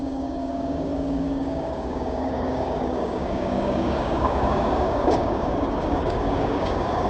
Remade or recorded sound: remade